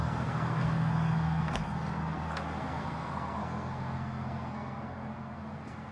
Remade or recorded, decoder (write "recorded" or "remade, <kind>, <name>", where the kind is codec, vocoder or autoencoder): remade, codec, SNAC